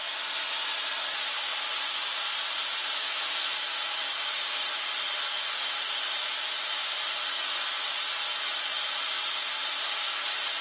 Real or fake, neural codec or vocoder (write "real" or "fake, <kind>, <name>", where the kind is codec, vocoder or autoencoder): real